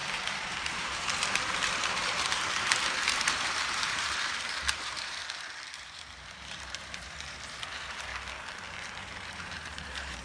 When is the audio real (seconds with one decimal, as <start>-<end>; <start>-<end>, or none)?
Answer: 5.2-5.8; 8.1-8.8